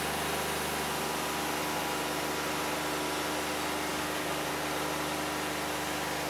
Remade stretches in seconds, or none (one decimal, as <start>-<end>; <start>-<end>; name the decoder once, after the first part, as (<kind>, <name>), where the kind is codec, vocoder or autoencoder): 3.9-4.5 (codec, DAC)